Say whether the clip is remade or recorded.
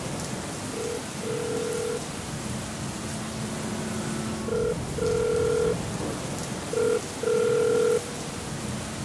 recorded